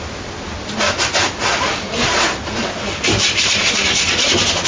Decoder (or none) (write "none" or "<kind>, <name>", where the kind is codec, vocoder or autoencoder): none